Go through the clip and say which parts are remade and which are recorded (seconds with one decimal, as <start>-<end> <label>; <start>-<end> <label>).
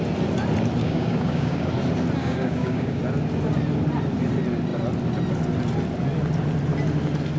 0.0-0.8 recorded; 0.8-1.7 remade; 1.7-2.2 recorded; 2.2-3.0 remade; 3.0-7.4 recorded